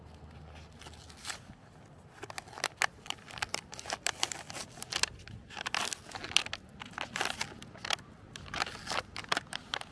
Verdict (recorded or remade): recorded